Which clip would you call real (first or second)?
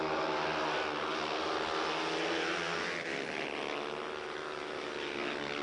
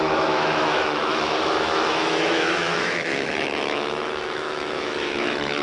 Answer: first